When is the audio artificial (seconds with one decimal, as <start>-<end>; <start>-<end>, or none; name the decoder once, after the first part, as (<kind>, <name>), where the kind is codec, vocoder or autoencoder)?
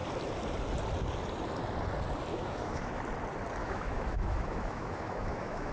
2.3-3.0 (autoencoder, DAC-VAE); 3.6-5.7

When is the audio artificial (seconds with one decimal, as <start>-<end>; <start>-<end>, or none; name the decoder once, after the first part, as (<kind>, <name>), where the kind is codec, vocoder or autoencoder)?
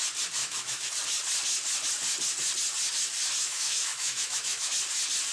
0.4-0.9 (autoencoder, DAC-VAE); 3.4-4.7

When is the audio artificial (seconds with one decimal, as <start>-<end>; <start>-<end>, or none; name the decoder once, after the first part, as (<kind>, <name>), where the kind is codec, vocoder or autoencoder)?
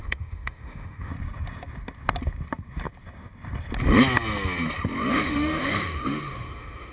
0.0-1.1 (autoencoder, DAC-VAE); 5.1-6.9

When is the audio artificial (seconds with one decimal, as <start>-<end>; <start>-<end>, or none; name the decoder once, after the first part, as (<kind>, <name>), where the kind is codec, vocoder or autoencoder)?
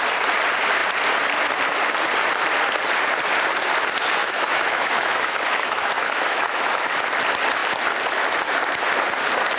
4.2-6.9 (autoencoder, DAC-VAE)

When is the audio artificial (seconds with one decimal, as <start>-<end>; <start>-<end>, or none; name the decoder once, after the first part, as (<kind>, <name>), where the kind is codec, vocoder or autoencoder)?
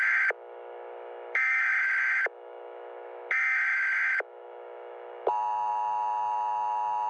0.0-7.1 (autoencoder, DAC-VAE)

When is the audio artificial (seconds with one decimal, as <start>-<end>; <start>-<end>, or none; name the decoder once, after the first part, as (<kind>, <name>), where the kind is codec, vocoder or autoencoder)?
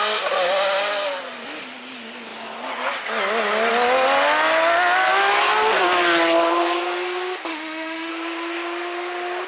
7.5-8.1 (autoencoder, DAC-VAE)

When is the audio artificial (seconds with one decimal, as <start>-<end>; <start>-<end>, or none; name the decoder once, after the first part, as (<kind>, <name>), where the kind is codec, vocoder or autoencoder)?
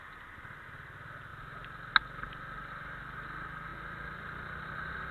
none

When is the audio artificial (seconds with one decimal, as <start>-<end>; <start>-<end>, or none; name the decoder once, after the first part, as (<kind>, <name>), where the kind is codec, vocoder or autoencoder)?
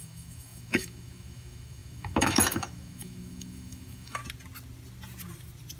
0.0-4.2 (autoencoder, DAC-VAE)